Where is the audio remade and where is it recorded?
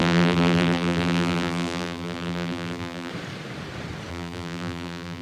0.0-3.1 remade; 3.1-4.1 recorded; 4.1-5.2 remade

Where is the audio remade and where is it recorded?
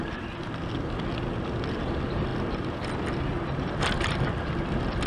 0.0-5.1 recorded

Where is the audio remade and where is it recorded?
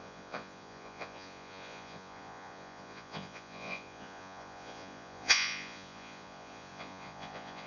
0.0-7.7 remade